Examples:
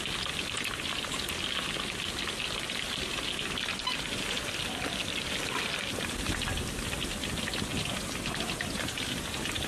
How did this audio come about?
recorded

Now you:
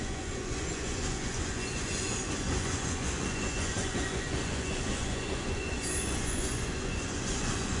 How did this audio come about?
remade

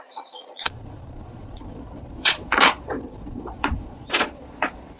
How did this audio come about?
remade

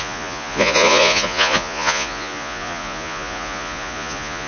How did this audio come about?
remade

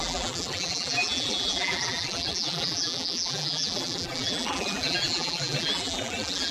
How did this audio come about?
remade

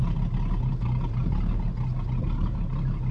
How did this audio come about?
recorded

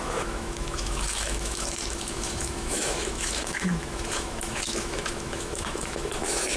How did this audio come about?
remade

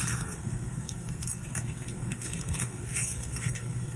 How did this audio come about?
remade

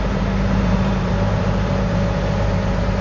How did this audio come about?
remade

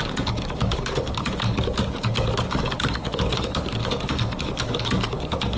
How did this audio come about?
remade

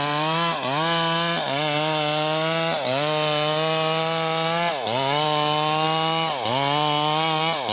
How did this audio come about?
recorded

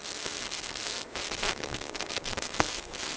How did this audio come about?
remade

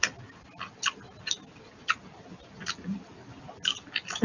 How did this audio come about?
recorded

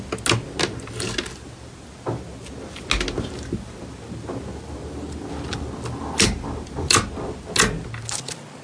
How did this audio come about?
recorded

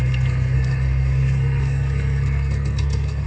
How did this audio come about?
remade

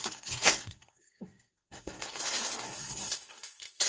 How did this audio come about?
remade